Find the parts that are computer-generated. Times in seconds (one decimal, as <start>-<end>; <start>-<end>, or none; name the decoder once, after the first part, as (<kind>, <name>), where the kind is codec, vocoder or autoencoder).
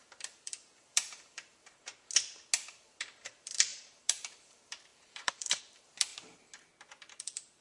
0.0-1.9 (vocoder, BigVGAN v2); 2.7-6.1; 6.9-7.6